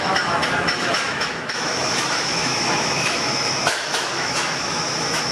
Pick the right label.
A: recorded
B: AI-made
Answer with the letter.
B